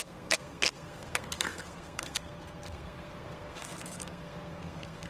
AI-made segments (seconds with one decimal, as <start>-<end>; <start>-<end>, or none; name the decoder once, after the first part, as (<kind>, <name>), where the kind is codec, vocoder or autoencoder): 0.0-5.1 (codec, SNAC)